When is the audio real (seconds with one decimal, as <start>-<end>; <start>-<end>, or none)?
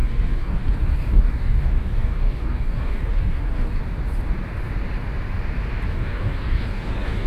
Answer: 3.8-5.9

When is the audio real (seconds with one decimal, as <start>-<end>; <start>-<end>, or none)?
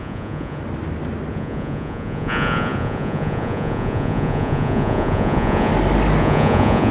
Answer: 0.6-1.3; 5.7-6.2